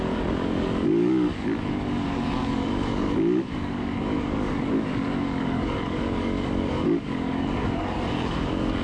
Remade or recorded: remade